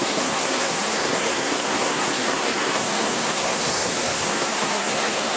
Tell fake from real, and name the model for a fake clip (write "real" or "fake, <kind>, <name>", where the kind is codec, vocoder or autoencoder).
fake, codec, SNAC